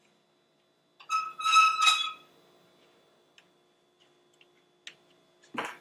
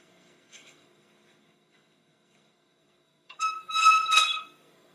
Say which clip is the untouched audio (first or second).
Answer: first